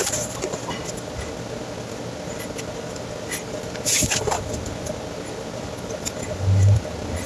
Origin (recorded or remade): recorded